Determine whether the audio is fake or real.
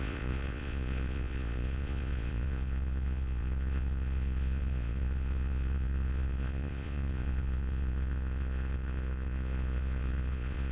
fake